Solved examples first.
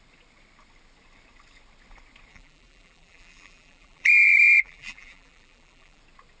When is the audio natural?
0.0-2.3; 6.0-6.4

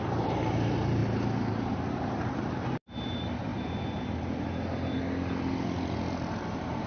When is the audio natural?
1.0-1.5; 3.5-6.3